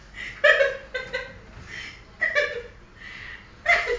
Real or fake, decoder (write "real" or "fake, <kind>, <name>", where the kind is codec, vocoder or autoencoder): real